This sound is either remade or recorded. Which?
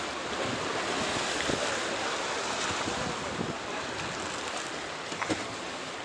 recorded